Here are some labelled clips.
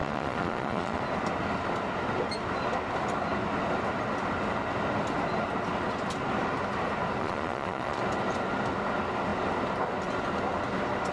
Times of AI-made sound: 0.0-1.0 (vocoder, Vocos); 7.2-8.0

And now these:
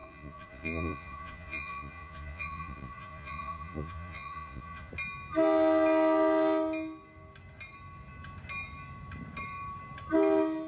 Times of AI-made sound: 0.0-4.9 (vocoder, Vocos)

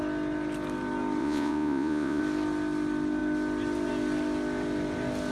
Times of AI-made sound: 1.2-2.2 (vocoder, Vocos)